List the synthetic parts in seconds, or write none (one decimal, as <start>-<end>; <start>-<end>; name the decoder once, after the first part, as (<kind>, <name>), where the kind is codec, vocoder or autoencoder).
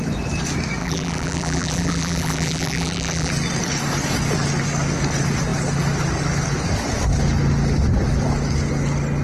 0.8-3.3 (vocoder, BigVGAN v2)